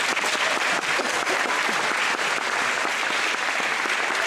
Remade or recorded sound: recorded